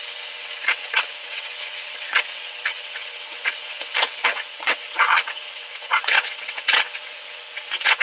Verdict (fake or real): fake